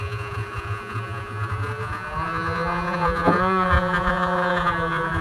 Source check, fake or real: fake